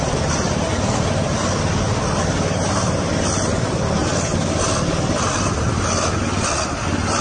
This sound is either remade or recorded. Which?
recorded